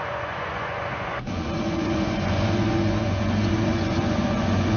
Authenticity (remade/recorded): remade